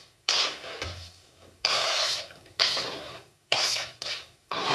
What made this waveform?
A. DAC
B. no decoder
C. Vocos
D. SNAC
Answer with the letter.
D